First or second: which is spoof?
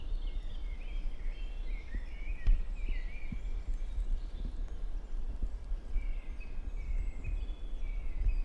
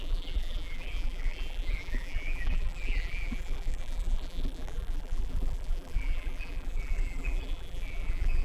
second